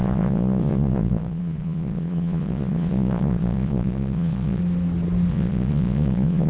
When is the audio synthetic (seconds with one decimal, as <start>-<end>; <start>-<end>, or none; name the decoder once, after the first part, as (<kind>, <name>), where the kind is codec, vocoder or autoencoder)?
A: 0.0-4.6 (vocoder, Vocos); 5.3-6.5